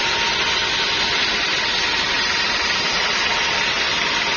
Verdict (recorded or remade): recorded